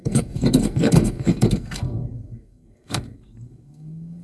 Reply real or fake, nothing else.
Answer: fake